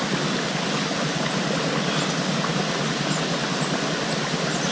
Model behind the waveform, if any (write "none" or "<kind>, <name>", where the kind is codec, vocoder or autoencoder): none